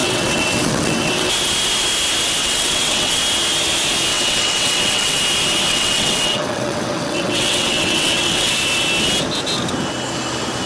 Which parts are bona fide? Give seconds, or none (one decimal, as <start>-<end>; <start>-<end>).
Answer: 1.3-2.4; 3.2-4.1; 5.2-5.7; 8.5-10.7